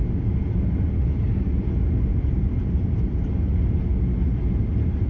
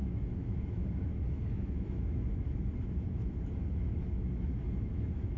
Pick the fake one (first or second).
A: second